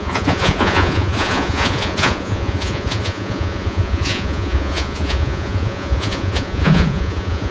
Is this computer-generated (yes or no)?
yes